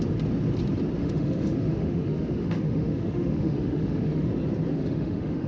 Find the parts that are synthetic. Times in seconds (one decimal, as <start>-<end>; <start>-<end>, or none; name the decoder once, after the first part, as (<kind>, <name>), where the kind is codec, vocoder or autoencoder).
1.0-4.3 (autoencoder, DAC-VAE); 4.7-5.5